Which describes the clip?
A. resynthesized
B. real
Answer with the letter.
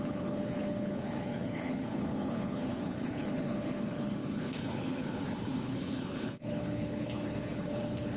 A